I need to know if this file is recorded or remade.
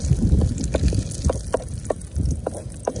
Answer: recorded